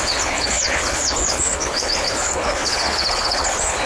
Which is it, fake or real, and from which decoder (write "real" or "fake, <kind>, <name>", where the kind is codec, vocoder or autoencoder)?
fake, codec, HILCodec